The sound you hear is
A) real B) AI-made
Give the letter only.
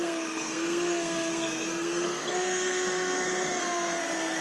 B